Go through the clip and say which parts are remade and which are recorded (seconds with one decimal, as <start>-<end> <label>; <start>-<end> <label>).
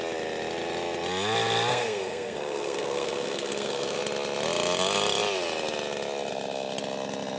0.0-1.7 recorded; 1.7-4.0 remade; 4.0-7.4 recorded